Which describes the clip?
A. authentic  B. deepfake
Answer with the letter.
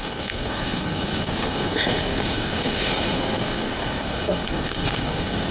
B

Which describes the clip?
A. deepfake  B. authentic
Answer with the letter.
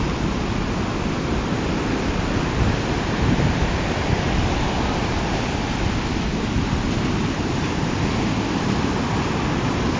B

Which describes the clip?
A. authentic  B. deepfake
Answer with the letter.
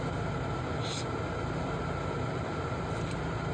A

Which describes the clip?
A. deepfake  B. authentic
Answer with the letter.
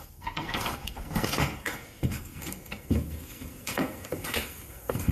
A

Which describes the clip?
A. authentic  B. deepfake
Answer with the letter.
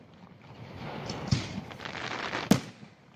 A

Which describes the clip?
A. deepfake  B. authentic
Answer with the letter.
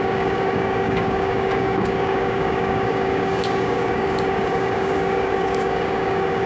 A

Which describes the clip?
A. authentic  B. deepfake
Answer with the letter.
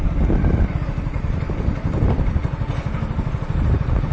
A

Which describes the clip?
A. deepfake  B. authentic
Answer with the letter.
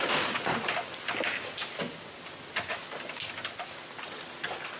B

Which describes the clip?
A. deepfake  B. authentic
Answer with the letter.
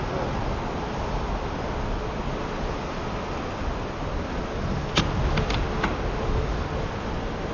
B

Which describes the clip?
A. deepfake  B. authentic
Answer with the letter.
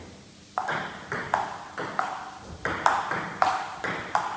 B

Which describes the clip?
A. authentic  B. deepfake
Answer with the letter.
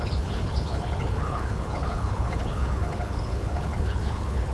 B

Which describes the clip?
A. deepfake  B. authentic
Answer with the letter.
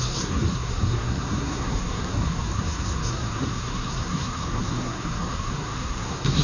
A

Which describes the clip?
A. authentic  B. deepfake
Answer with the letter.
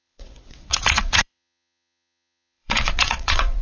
B